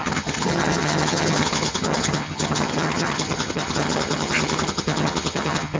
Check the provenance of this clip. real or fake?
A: fake